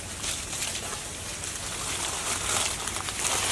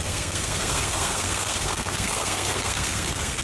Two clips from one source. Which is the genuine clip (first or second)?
first